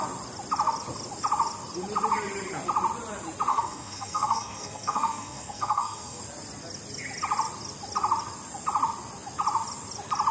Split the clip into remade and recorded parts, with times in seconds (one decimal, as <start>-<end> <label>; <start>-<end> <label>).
0.0-3.5 recorded; 3.5-6.2 remade; 6.2-10.3 recorded